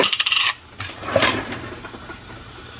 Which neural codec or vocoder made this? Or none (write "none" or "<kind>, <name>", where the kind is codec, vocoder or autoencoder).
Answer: vocoder, BigVGAN v2